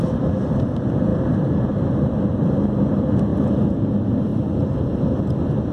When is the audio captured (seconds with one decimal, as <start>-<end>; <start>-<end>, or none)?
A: 0.0-1.1; 2.8-3.3; 3.9-4.3; 4.9-5.7